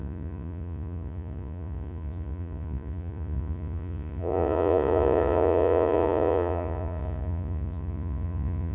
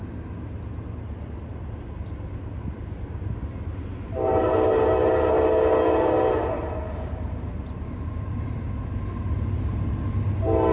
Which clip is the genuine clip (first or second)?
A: second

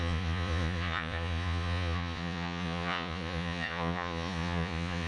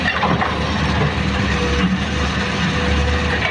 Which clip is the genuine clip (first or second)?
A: second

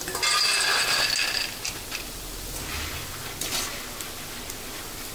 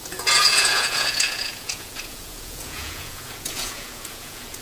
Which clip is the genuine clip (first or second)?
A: first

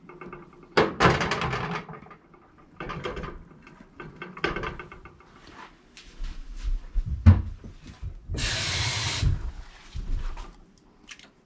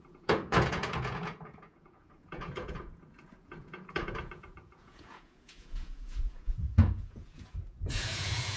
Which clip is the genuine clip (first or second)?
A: first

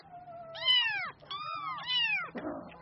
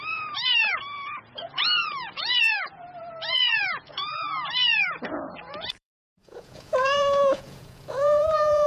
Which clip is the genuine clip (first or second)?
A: first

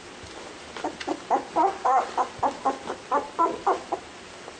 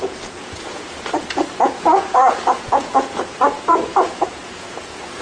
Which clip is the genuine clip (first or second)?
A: first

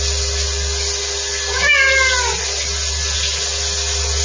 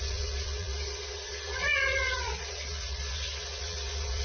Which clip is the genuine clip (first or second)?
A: first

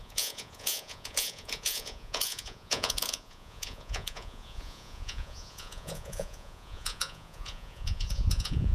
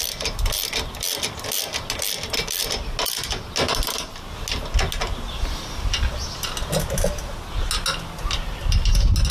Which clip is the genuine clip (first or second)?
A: second